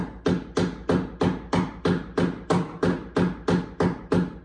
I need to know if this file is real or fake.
real